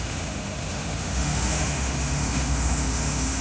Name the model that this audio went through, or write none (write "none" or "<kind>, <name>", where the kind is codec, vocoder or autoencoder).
autoencoder, DAC-VAE